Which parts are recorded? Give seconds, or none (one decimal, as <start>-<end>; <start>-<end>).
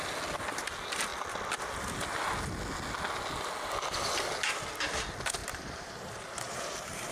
0.0-5.4